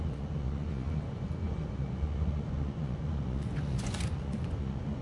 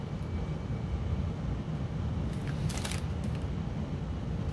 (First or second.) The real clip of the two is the second